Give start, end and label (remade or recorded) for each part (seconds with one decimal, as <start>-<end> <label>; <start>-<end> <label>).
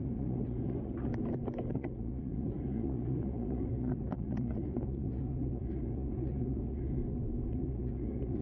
0.0-1.1 remade; 1.1-1.7 recorded; 1.7-7.0 remade; 7.0-7.5 recorded; 7.5-8.4 remade